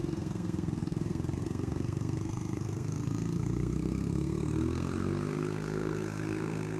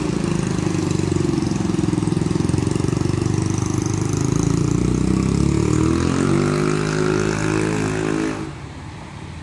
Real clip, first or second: second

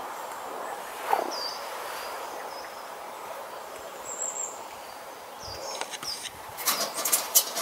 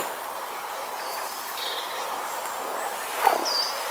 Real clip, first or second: second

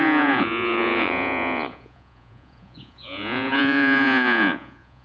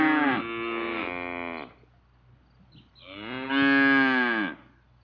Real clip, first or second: second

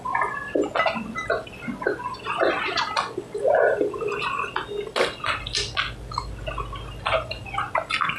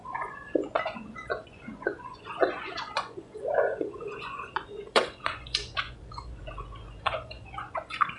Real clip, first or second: first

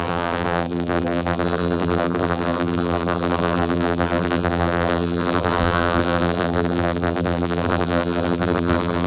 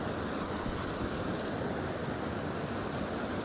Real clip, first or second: second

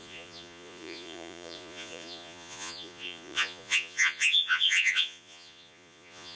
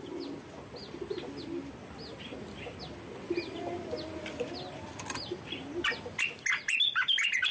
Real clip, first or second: second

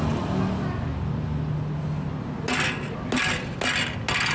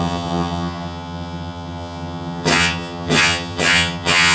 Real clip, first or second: first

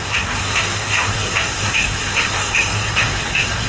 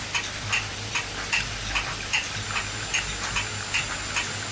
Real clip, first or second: second